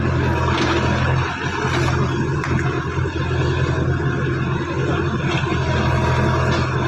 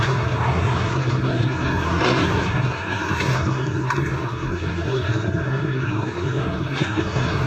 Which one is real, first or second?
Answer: first